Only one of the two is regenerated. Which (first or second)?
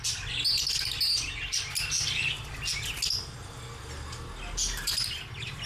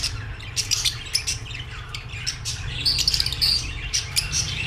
second